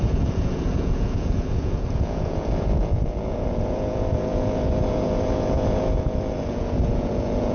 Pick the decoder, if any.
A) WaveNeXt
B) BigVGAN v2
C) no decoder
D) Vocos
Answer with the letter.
D